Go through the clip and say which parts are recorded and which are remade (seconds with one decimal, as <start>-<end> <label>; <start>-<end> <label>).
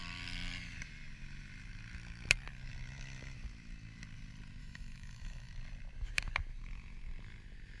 0.0-4.6 recorded; 4.6-5.5 remade; 5.5-7.8 recorded